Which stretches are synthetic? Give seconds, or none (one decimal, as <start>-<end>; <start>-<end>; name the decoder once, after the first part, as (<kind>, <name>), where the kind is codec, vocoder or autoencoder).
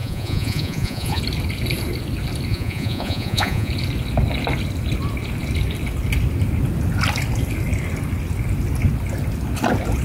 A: 0.0-1.2 (vocoder, Vocos); 2.5-3.7